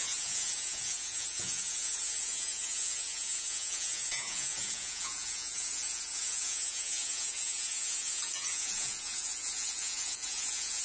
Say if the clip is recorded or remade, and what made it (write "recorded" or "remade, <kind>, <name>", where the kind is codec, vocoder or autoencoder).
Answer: remade, vocoder, Vocos